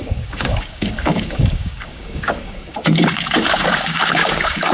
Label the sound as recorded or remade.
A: remade